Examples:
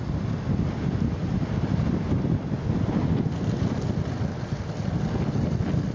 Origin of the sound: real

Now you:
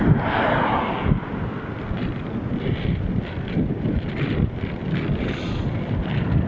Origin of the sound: real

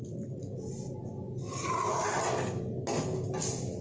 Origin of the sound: real